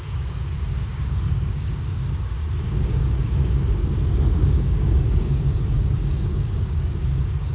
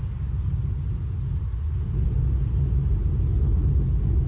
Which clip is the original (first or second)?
second